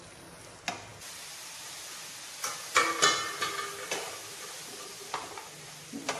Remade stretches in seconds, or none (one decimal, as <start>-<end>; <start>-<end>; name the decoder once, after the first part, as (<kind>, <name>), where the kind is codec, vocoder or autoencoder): none